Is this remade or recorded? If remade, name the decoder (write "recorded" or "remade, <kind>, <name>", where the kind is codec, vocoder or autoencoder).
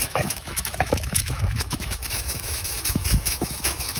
remade, autoencoder, DAC-VAE